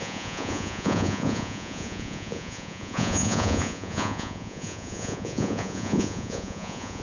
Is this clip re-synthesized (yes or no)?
yes